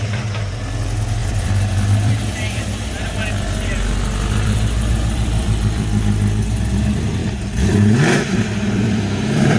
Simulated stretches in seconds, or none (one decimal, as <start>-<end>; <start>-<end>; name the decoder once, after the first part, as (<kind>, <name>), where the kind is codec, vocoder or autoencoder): 1.2-6.0 (vocoder, BigVGAN v2); 7.2-9.6

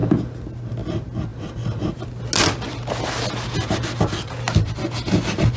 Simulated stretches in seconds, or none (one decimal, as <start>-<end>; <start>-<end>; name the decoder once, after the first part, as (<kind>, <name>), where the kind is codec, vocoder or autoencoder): none

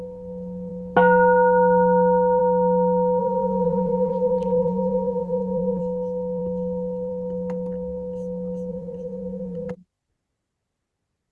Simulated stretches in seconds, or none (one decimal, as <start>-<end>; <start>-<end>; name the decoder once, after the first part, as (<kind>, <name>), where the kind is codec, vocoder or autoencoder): 3.2-5.8 (vocoder, Vocos); 8.7-9.7